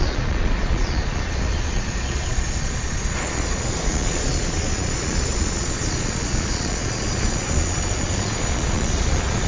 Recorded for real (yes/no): no